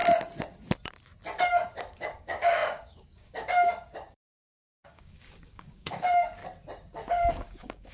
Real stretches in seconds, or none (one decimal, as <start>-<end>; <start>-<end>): 0.0-1.5; 6.4-7.3